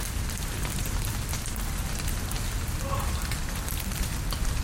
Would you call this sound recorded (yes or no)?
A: yes